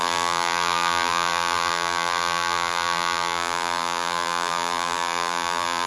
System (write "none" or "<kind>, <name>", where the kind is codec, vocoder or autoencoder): vocoder, BigVGAN v2